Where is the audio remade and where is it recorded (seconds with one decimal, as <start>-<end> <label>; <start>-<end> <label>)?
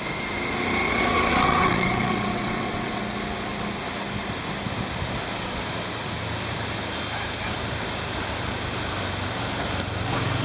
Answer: 0.0-0.8 recorded; 0.8-3.0 remade; 3.0-10.4 recorded